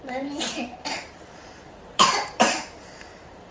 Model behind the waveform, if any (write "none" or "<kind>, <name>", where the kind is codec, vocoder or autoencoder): vocoder, BigVGAN v2